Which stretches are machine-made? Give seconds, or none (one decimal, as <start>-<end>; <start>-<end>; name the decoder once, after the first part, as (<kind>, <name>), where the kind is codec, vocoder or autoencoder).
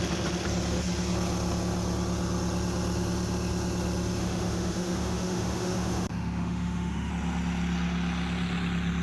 4.2-7.1 (autoencoder, DAC-VAE)